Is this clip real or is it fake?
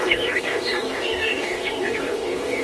fake